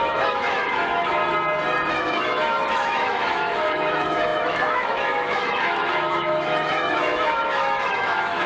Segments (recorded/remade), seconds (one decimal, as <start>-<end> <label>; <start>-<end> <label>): 0.0-1.2 remade; 1.2-1.9 recorded; 1.9-8.5 remade